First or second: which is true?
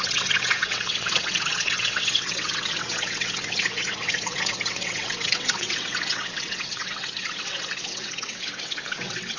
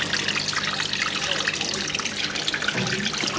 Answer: second